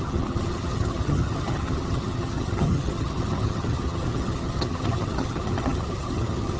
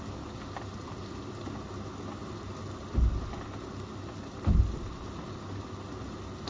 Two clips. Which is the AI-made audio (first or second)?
first